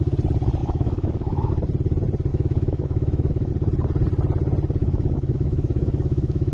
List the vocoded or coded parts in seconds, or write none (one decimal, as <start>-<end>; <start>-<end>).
0.6-1.5; 2.3-3.5; 4.8-6.5